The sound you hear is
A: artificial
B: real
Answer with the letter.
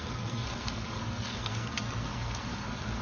A